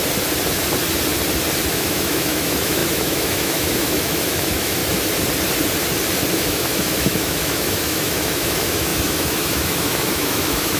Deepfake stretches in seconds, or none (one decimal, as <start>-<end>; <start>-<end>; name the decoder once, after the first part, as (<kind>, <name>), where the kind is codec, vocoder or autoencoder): 1.7-4.8 (autoencoder, DAC-VAE); 6.3-10.8